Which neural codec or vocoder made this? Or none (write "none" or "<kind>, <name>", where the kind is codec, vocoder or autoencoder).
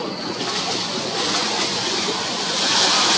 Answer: vocoder, Vocos